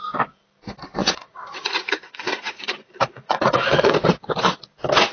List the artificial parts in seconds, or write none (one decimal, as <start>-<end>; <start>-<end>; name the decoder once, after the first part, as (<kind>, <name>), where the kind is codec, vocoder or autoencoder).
1.0-4.1 (vocoder, Vocos)